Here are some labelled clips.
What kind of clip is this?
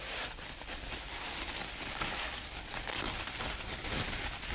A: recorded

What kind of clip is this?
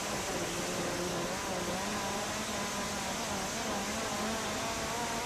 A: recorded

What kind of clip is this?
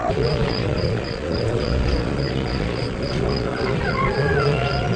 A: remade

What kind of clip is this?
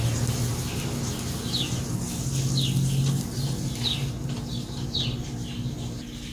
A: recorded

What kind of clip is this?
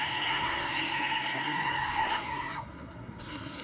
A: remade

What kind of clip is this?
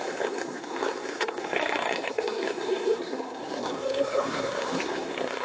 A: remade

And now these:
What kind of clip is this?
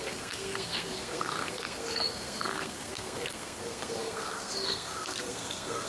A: remade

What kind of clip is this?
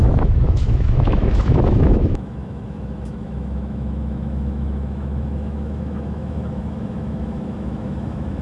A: remade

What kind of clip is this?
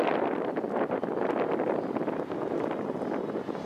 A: recorded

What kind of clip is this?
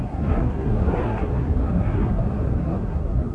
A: remade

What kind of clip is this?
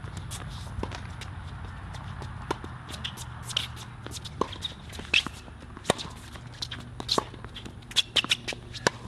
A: recorded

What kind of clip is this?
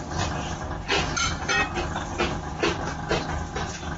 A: recorded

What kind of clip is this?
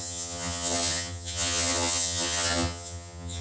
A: remade